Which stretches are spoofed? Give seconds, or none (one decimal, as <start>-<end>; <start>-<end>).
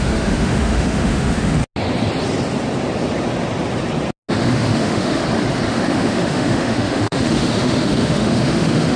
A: 0.0-1.6; 4.3-5.2; 5.7-9.0